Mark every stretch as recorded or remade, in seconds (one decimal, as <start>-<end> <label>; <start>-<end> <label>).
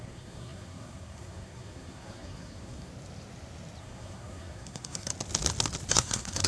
0.0-2.9 remade; 2.9-3.8 recorded; 3.8-5.1 remade; 5.1-5.9 recorded; 5.9-6.5 remade